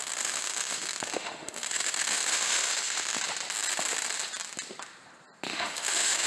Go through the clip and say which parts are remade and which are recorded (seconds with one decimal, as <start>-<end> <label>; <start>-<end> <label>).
0.0-3.2 remade; 3.2-5.5 recorded; 5.5-6.3 remade